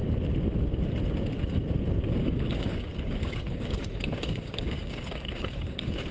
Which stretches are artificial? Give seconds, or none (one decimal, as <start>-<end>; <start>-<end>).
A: 2.1-6.1